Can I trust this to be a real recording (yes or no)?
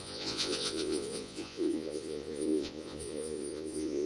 no